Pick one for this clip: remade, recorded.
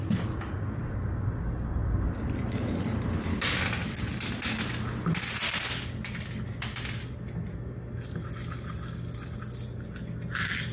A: recorded